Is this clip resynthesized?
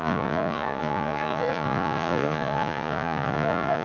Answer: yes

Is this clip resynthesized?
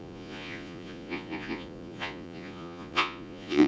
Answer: yes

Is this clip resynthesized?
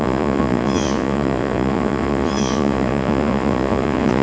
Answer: yes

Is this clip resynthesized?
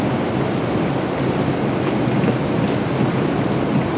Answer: no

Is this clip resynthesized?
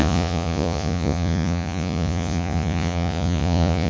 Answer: yes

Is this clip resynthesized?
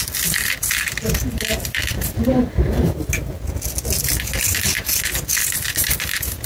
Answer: no